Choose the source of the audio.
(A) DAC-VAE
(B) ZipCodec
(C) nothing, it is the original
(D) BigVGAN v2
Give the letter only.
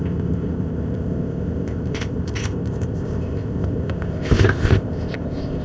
B